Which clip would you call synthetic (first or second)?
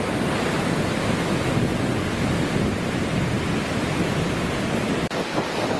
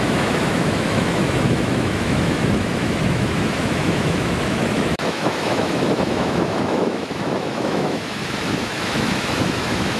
second